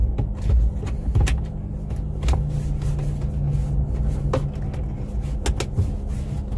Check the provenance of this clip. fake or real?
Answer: real